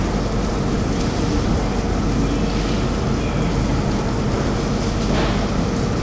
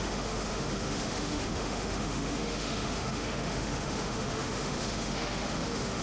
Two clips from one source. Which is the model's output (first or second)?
second